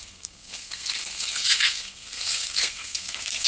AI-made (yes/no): yes